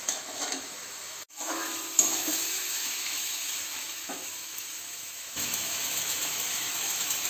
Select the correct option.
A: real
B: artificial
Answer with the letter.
B